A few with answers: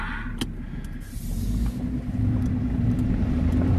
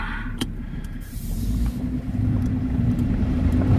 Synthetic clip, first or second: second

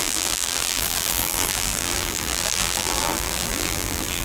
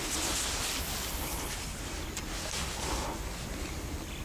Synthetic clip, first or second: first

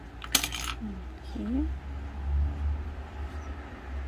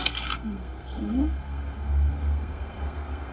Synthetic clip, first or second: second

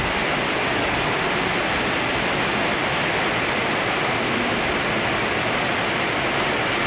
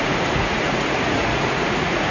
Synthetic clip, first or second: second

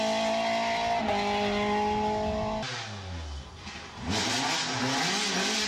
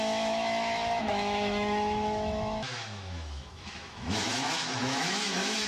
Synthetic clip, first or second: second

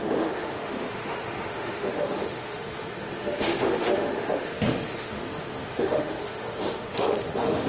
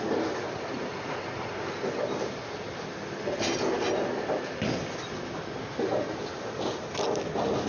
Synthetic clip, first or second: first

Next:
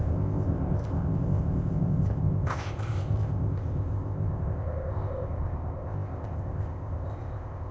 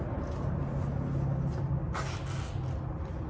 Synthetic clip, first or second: first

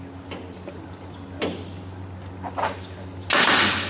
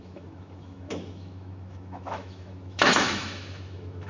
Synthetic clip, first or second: second